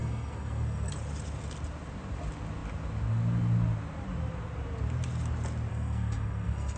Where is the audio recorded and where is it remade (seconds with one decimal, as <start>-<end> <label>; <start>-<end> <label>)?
0.0-0.9 remade; 0.9-5.7 recorded; 5.7-6.8 remade